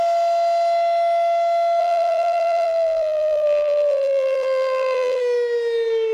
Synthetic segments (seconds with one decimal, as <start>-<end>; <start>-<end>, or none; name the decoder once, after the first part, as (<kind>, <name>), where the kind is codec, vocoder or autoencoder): 1.8-5.2 (vocoder, BigVGAN v2)